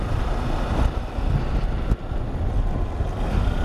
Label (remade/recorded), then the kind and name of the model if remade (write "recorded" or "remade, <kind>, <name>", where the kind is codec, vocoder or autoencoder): recorded